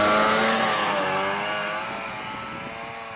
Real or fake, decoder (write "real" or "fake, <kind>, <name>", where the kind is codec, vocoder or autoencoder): real